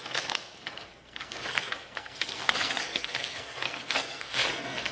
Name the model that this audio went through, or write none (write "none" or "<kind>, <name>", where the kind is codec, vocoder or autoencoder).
codec, SNAC